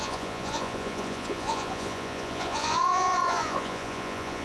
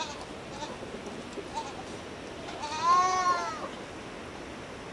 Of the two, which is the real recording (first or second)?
second